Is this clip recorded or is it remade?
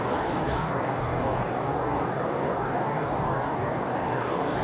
remade